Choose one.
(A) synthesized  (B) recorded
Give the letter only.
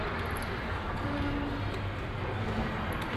B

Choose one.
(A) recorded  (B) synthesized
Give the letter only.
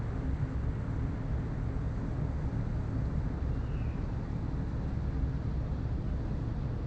A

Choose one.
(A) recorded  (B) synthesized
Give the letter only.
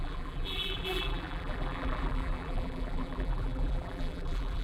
B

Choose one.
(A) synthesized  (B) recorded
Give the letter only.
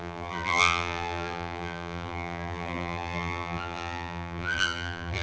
A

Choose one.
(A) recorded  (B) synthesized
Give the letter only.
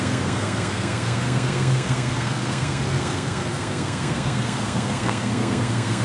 B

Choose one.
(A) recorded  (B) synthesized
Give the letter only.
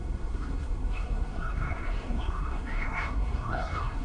B